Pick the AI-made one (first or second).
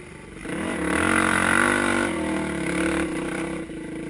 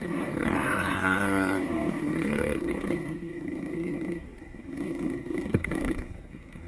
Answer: second